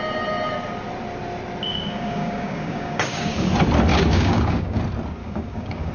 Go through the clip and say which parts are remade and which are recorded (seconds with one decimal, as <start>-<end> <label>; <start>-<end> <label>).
0.0-1.7 recorded; 1.7-3.5 remade; 3.5-3.9 recorded; 3.9-4.8 remade; 4.8-5.2 recorded; 5.2-5.9 remade